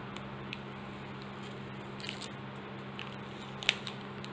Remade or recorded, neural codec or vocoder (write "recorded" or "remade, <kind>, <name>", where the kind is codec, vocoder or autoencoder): recorded